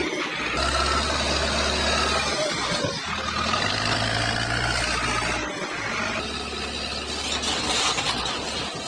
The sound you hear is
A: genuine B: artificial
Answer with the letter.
A